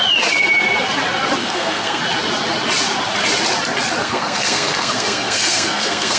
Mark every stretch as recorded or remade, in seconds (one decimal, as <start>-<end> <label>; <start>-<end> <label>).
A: 0.0-1.4 recorded; 1.4-2.0 remade; 2.0-4.0 recorded; 4.0-6.2 remade